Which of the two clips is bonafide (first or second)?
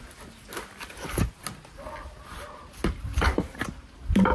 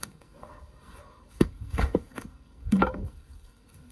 first